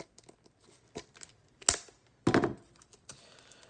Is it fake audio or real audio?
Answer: real